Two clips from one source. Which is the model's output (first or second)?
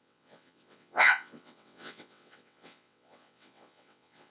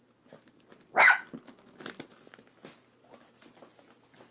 first